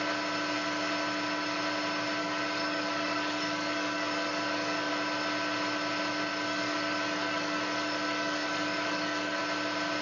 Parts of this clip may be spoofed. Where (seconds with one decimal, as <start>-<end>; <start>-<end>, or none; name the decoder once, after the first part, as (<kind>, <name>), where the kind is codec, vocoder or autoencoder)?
2.2-4.9 (codec, DAC); 6.3-9.4